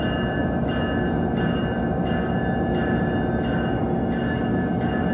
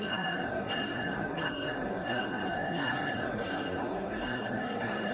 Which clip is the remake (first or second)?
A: second